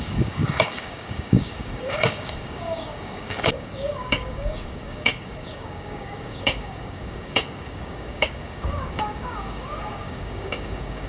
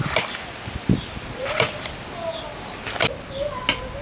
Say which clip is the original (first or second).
second